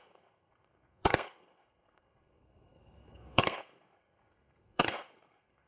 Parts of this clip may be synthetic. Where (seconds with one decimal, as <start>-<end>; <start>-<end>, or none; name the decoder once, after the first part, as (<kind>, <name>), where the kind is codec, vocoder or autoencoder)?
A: 0.0-5.7 (codec, SNAC)